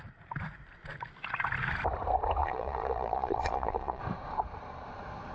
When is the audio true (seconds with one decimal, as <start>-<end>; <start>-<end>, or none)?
0.0-2.4; 4.0-5.3